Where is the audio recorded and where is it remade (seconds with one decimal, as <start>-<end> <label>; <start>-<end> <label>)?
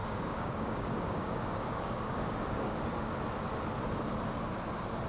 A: 0.0-3.1 remade; 3.1-5.1 recorded